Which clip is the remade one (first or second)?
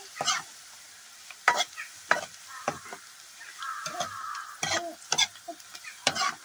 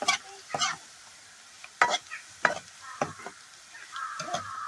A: first